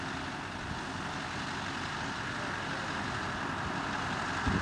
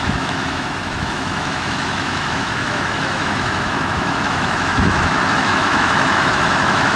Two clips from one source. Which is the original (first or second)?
first